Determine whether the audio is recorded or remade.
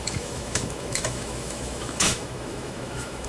remade